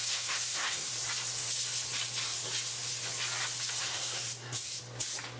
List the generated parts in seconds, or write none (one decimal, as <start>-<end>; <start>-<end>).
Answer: 0.0-0.9; 3.8-4.8